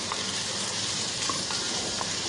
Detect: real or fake fake